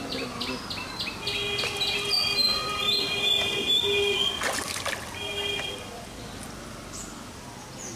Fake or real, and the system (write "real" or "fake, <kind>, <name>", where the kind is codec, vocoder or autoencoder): real